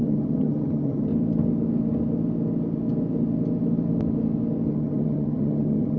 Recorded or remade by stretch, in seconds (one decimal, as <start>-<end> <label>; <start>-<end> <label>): 0.0-1.1 remade; 1.1-4.7 recorded; 4.7-6.0 remade